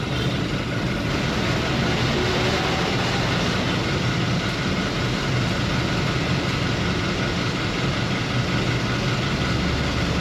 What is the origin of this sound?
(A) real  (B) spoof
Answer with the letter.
A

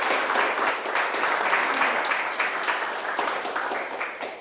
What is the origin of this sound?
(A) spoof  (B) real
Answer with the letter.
A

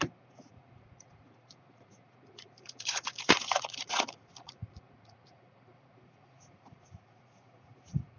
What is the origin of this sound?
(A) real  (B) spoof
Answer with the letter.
B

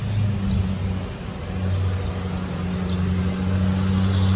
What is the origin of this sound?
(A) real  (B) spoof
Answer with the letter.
A